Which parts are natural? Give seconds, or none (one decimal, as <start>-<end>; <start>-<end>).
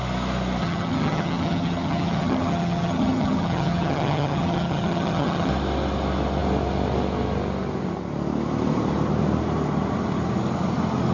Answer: 0.0-0.6; 5.5-11.1